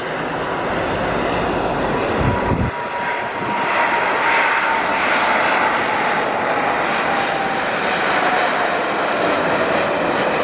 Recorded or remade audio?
recorded